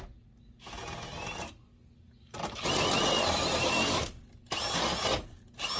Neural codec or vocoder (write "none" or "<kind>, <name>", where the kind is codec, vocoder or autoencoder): none